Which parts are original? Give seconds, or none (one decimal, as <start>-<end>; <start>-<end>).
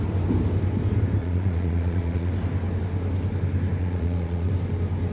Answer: 0.0-1.2; 2.3-3.8; 4.5-5.1